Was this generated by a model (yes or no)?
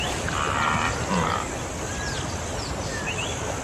yes